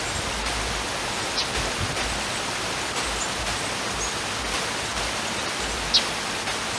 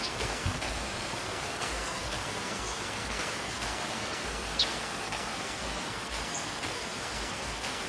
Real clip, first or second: first